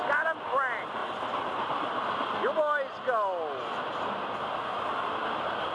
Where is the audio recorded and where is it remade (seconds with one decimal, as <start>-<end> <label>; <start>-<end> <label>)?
0.0-5.7 recorded